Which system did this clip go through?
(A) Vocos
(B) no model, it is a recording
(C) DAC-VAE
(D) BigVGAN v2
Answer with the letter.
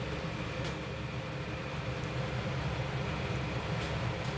B